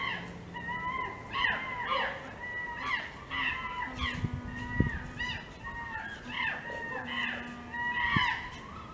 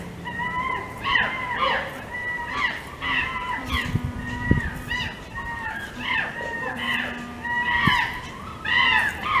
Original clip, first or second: first